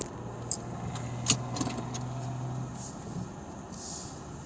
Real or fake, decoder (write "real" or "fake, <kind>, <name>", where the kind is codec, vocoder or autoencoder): real